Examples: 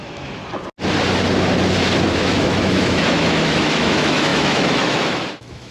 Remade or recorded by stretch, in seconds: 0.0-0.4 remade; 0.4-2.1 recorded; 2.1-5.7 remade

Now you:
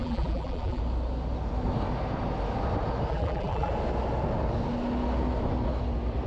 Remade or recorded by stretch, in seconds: 0.0-0.8 remade; 0.8-3.1 recorded; 3.1-3.7 remade; 3.7-6.3 recorded

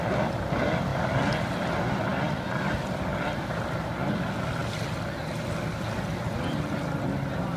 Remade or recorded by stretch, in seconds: 0.0-7.6 recorded

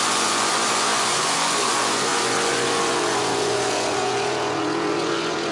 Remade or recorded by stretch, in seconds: 0.0-5.5 remade

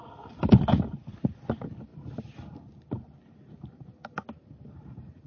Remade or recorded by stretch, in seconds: 0.0-1.9 recorded; 1.9-5.3 remade